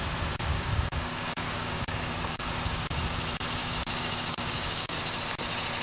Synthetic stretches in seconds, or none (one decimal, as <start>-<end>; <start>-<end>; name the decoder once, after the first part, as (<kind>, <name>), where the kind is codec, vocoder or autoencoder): 0.5-3.2 (codec, DAC); 3.6-5.0